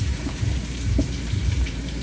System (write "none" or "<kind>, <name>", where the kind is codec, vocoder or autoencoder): vocoder, BigVGAN v2